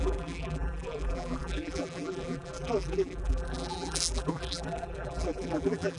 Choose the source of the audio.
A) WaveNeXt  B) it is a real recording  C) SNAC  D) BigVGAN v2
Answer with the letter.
D